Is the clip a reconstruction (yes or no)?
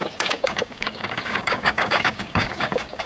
yes